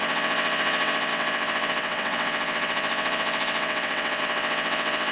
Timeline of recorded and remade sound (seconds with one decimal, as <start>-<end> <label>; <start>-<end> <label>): 0.0-5.1 remade